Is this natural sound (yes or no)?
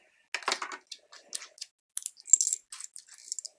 yes